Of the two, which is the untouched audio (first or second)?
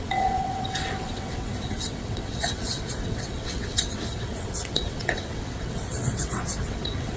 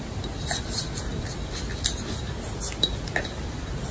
second